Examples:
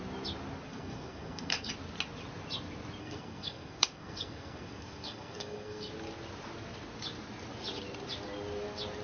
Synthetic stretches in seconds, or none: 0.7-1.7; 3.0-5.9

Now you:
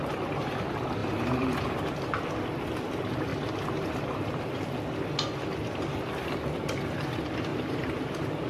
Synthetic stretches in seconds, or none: 1.0-1.8; 7.5-8.5

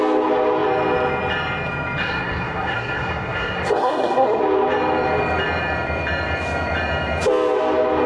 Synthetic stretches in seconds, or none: 2.0-4.4

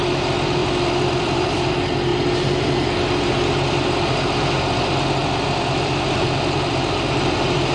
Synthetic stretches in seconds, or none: 0.6-1.7; 5.2-7.1

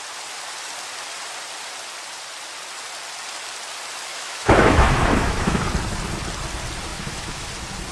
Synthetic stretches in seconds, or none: 4.1-5.6; 6.9-7.5

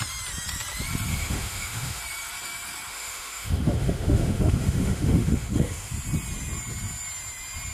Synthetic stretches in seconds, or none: 1.1-2.0; 2.9-5.9

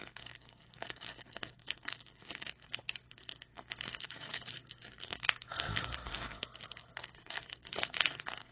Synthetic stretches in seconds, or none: 0.0-8.5